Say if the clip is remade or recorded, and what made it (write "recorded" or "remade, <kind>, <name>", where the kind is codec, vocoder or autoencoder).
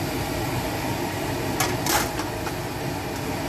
recorded